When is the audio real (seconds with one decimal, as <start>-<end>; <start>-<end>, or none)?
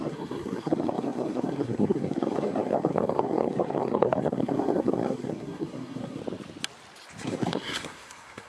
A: 6.2-7.2